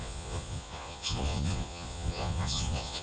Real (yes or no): no